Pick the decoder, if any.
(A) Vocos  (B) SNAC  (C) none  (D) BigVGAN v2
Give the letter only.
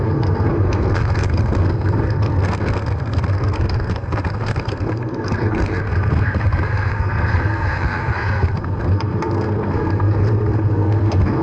B